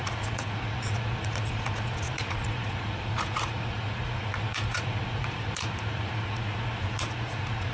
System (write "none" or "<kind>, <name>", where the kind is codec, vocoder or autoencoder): vocoder, Vocos